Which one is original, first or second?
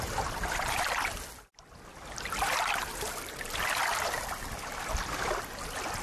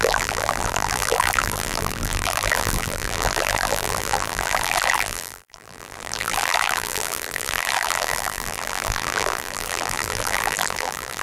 first